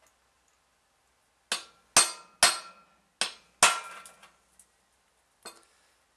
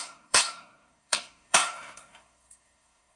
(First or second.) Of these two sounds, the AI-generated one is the second